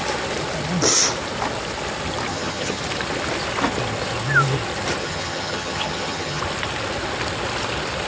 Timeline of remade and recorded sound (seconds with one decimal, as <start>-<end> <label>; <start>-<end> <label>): 0.0-2.3 recorded; 2.3-2.8 remade; 2.8-5.0 recorded; 5.0-6.4 remade; 6.4-8.1 recorded